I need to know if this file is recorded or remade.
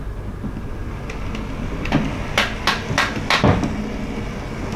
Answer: recorded